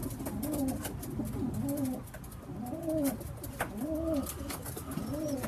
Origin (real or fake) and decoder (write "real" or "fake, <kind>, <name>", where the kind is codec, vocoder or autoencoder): real